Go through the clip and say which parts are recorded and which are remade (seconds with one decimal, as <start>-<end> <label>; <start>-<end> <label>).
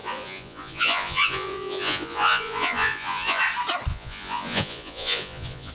0.0-3.4 remade; 3.4-3.9 recorded; 3.9-5.7 remade